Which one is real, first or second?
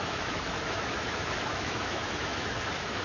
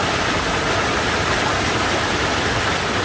second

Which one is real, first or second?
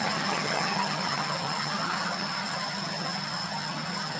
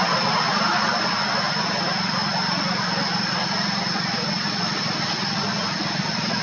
second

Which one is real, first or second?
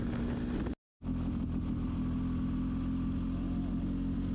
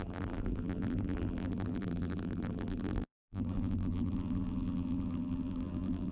first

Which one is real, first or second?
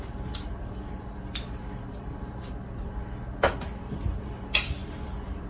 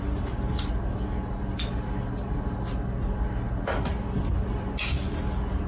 second